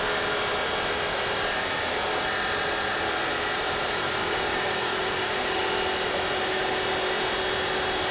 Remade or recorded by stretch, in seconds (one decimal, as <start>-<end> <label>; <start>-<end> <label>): 0.0-4.2 recorded; 4.2-5.6 remade; 5.6-8.1 recorded